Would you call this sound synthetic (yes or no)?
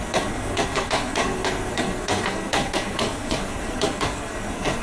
yes